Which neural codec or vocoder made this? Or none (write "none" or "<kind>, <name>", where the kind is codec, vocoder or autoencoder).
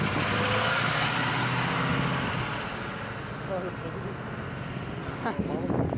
none